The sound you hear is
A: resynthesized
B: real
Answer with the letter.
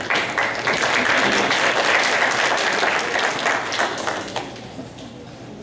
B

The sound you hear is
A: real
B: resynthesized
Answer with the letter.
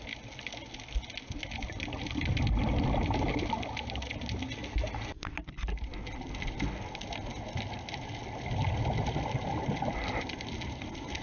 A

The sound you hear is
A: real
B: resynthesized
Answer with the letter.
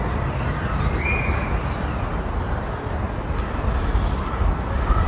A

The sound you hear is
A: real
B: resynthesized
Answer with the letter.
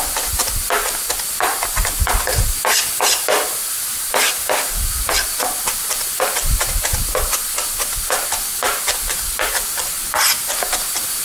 A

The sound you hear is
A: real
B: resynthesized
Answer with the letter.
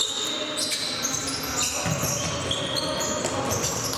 A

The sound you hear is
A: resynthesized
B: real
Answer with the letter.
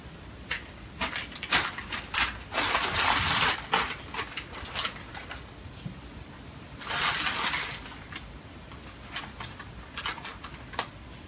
B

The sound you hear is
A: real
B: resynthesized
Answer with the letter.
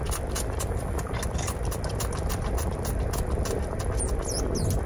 A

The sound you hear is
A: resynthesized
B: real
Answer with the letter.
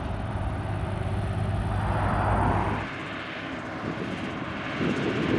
B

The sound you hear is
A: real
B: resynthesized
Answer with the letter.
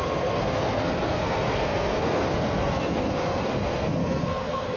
B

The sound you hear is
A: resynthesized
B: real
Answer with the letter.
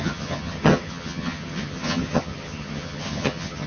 A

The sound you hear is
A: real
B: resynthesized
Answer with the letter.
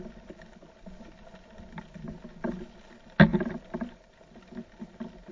A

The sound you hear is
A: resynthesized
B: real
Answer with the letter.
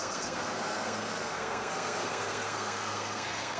A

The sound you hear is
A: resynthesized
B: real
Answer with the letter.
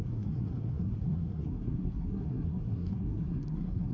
A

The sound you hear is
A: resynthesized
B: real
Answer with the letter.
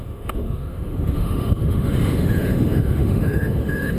A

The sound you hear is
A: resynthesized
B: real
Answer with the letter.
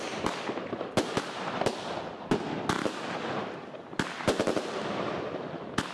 B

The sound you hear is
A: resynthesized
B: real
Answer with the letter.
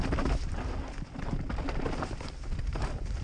B